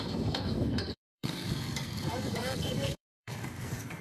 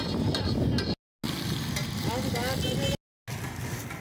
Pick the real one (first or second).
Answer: second